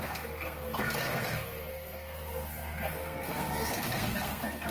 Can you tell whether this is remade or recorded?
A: remade